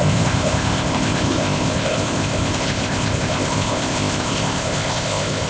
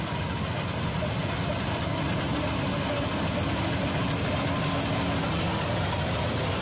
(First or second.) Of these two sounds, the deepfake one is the first